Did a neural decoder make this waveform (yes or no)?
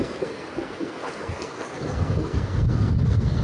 yes